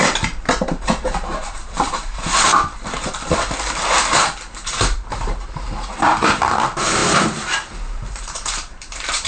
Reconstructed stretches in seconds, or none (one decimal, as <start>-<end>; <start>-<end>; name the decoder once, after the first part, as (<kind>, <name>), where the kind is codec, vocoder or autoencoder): 0.0-2.5 (vocoder, BigVGAN v2); 4.5-9.3